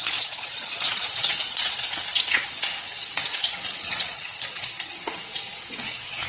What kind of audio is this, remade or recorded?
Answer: remade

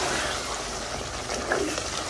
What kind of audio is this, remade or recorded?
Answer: recorded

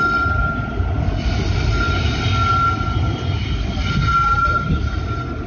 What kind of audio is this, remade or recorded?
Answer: recorded